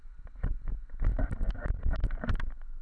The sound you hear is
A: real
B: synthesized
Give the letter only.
A